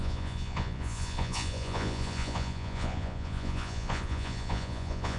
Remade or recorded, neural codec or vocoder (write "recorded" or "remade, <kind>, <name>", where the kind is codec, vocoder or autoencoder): remade, vocoder, Vocos